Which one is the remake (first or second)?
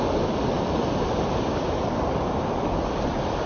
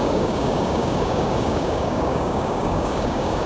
second